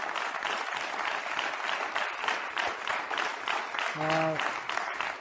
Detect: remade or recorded recorded